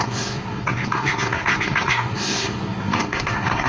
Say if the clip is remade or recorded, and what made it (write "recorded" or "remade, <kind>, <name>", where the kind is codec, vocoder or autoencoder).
remade, codec, SNAC